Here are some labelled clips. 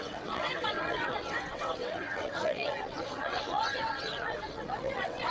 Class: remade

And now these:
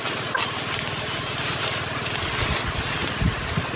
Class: recorded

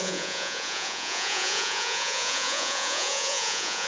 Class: remade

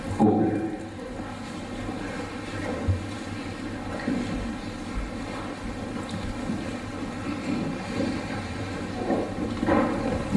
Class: recorded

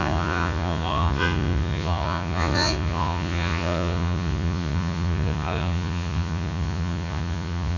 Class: remade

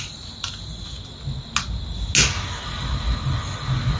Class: recorded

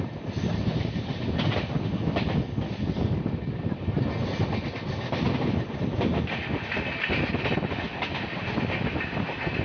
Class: recorded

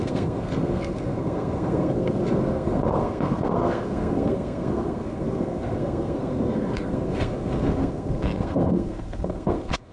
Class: remade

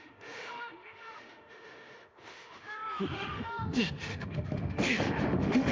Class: remade